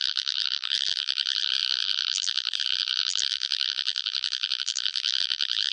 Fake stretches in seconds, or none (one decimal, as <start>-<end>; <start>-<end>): 0.0-5.7